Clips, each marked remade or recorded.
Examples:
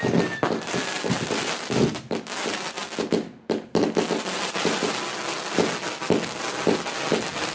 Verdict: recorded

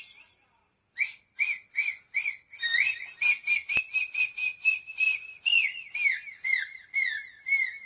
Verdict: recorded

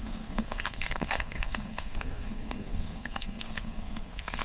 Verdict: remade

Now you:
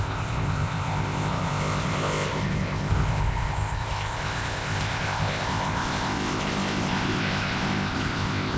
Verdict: remade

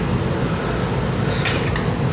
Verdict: recorded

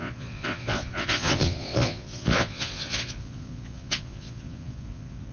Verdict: remade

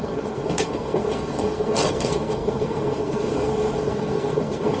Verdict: remade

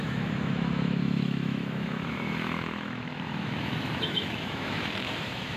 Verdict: remade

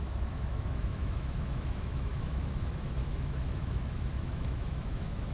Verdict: remade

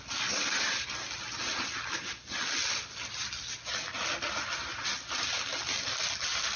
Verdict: recorded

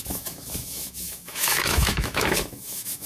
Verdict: remade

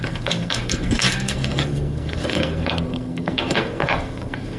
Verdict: remade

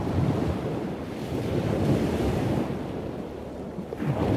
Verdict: recorded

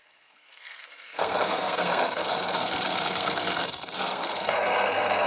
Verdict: remade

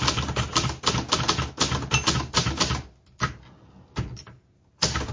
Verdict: recorded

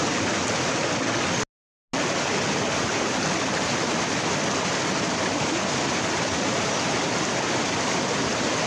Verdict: recorded